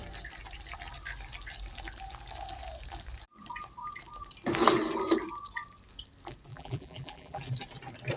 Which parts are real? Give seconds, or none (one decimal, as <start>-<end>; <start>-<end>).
0.0-6.5; 7.4-8.2